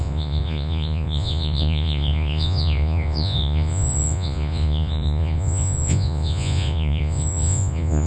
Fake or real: fake